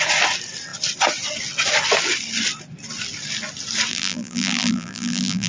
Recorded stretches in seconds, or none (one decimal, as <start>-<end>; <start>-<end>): 0.0-3.9